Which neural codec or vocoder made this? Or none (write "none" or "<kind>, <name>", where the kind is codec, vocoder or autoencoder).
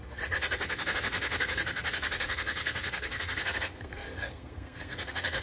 codec, SNAC